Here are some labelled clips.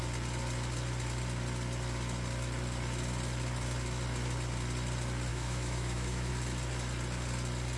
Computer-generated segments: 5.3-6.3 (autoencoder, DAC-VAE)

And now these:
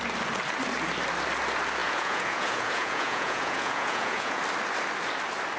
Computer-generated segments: 1.8-4.4 (vocoder, Vocos)

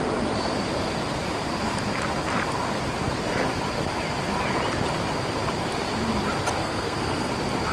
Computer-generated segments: 6.6-7.3 (codec, SNAC)

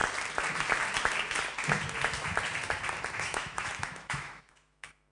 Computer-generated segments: 3.1-5.1 (autoencoder, DAC-VAE)